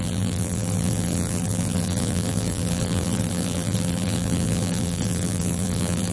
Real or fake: fake